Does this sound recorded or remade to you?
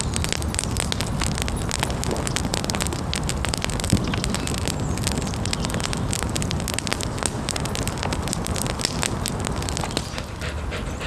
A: recorded